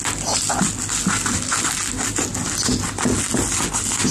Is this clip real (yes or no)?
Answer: yes